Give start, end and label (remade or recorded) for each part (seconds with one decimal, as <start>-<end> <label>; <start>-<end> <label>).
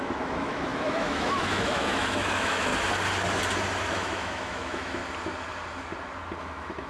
0.0-2.7 remade; 2.7-3.9 recorded; 3.9-5.0 remade; 5.0-6.4 recorded; 6.4-6.9 remade